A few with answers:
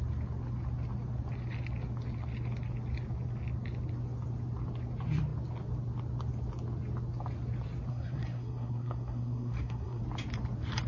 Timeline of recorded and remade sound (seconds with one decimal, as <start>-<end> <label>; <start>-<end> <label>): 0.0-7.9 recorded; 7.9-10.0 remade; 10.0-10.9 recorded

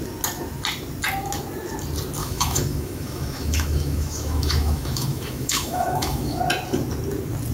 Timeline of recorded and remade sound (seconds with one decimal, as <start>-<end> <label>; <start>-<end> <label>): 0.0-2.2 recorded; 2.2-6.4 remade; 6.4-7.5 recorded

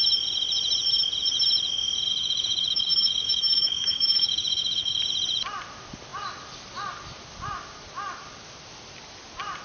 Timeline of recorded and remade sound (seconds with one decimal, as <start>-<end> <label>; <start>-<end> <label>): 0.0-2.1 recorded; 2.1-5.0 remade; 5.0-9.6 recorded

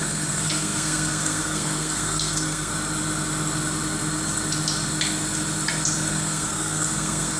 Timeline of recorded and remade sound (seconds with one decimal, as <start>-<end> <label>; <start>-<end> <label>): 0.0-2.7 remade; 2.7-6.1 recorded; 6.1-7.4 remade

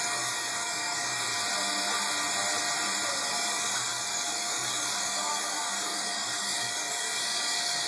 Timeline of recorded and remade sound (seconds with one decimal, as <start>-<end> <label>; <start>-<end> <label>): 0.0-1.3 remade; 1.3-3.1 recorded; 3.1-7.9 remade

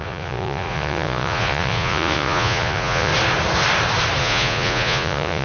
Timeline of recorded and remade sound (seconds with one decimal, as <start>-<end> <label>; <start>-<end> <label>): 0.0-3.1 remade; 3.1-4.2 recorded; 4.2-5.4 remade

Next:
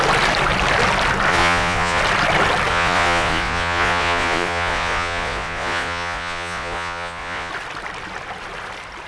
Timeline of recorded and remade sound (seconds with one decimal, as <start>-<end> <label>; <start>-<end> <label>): 0.0-1.3 recorded; 1.3-2.0 remade; 2.0-2.7 recorded; 2.7-7.5 remade; 7.5-9.1 recorded

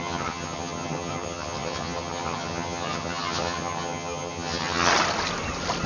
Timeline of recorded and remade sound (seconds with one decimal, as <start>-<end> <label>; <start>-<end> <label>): 0.0-4.9 remade; 4.9-5.9 recorded